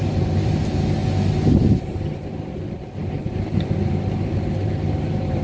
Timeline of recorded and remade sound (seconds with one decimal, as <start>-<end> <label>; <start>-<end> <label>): 0.0-1.0 remade; 1.0-2.3 recorded; 2.3-5.4 remade